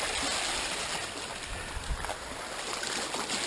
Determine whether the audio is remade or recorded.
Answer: recorded